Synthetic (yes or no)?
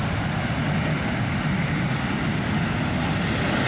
no